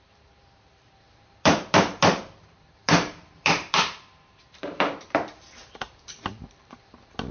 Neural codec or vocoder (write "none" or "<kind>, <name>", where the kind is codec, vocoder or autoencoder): vocoder, BigVGAN v2